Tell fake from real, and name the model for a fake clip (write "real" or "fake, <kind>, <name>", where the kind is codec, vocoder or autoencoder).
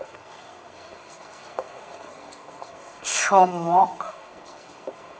fake, codec, SNAC